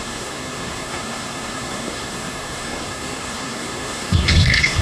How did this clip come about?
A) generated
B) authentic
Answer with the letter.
A